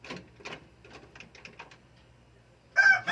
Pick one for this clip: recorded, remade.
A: recorded